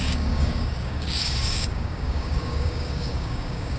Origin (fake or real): fake